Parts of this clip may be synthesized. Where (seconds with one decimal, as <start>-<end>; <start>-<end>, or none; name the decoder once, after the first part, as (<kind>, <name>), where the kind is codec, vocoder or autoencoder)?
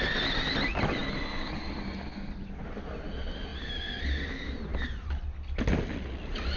none